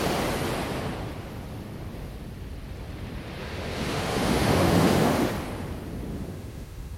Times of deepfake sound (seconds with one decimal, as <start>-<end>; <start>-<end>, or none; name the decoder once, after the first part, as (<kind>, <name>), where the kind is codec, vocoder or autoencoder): 3.4-5.3 (autoencoder, DAC-VAE); 6.1-7.0